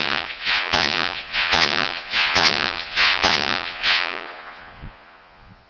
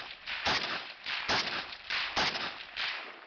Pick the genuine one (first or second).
second